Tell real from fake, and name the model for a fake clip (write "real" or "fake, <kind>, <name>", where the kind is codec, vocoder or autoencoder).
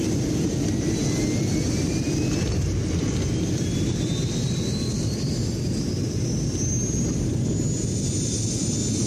real